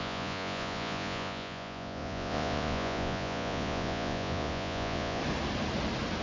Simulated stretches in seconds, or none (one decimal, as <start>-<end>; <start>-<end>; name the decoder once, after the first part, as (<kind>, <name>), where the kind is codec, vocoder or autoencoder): 0.0-5.2 (vocoder, Vocos)